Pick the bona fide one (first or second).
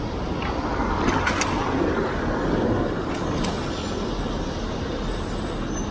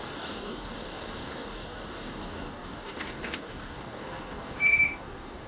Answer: first